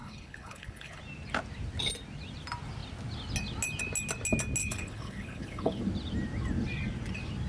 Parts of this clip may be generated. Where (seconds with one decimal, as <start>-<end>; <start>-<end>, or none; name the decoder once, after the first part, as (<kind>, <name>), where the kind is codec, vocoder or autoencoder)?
0.0-1.0 (codec, HILCodec); 4.6-5.8